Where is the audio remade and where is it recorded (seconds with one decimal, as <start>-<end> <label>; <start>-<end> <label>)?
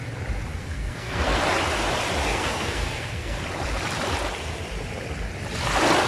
0.0-0.6 recorded; 0.6-1.4 remade; 1.4-2.2 recorded; 2.2-3.4 remade; 3.4-6.1 recorded